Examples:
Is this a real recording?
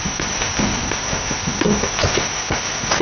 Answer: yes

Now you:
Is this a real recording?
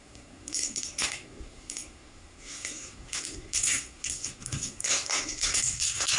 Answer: no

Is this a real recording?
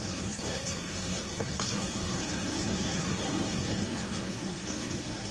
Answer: no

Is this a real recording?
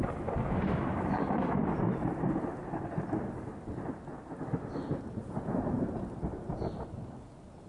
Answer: yes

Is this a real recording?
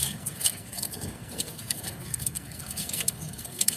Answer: no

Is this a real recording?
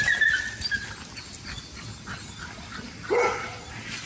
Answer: yes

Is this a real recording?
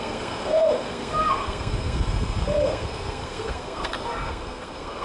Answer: no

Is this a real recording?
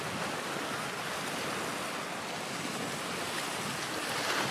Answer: yes